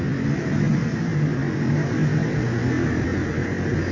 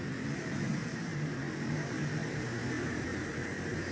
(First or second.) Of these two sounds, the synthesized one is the second